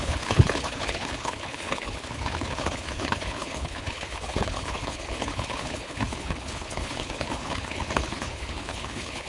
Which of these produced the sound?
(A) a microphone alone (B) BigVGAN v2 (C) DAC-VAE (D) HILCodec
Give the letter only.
D